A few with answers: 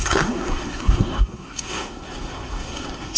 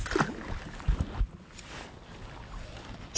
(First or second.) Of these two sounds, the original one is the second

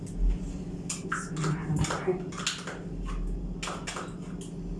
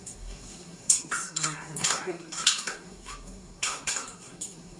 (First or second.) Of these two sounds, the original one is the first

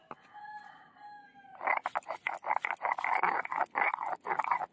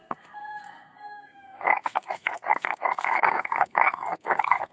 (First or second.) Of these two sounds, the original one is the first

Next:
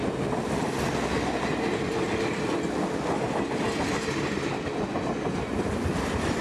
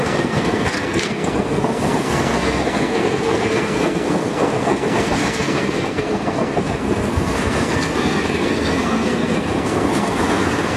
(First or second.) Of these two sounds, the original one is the first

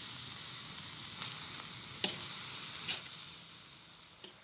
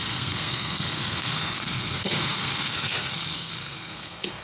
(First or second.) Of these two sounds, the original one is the first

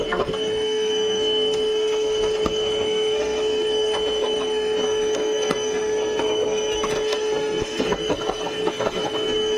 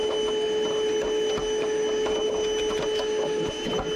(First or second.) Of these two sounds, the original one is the second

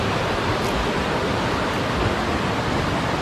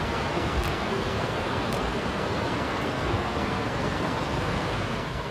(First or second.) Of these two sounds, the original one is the first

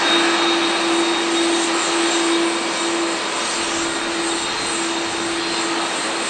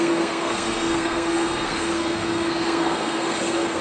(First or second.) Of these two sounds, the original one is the first